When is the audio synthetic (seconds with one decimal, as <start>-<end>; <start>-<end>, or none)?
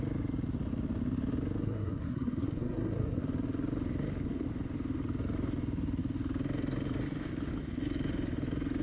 1.6-3.2